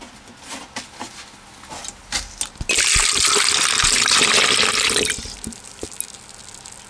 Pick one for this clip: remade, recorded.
recorded